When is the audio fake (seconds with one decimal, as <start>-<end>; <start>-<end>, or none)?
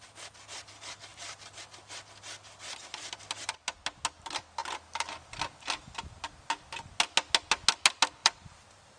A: 1.1-1.6; 4.6-6.0; 8.2-9.0